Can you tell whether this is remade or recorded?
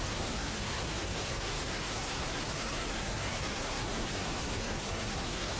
remade